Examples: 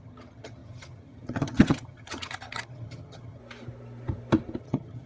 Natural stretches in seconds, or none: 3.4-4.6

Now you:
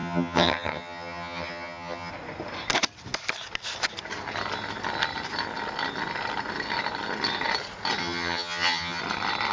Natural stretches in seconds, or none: 2.1-8.0; 9.0-9.5

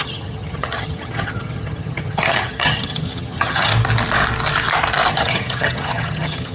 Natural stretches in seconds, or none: 3.7-5.1

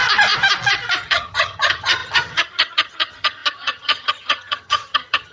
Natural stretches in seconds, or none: 0.0-1.0